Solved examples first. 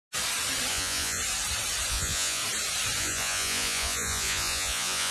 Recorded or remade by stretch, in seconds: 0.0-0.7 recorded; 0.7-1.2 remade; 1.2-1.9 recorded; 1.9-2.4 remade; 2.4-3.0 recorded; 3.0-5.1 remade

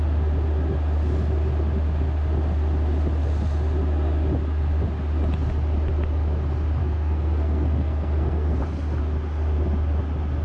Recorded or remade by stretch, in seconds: 0.0-6.8 recorded; 6.8-8.6 remade; 8.6-10.4 recorded

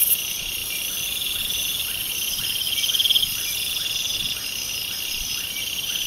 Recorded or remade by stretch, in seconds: 0.0-4.8 recorded; 4.8-6.1 remade